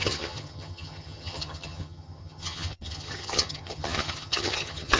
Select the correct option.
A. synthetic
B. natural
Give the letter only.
A